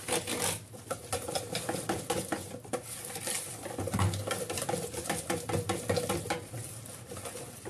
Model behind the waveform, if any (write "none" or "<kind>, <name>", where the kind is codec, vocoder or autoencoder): none